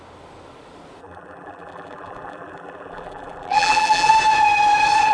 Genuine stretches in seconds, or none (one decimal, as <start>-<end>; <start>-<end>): 0.0-1.0; 4.1-5.1